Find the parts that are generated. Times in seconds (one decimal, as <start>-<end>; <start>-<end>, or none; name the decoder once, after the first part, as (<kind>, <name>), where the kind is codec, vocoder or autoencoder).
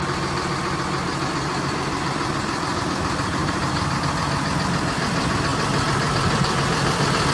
3.4-4.0 (vocoder, BigVGAN v2)